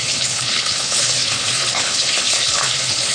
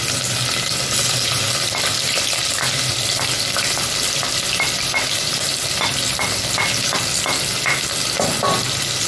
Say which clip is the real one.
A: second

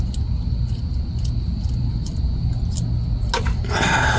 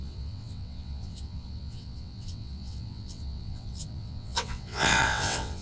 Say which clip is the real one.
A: first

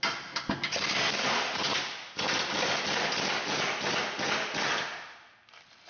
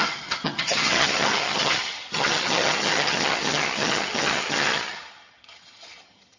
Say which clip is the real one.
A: first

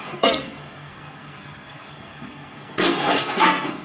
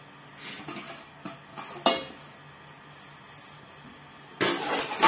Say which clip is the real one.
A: second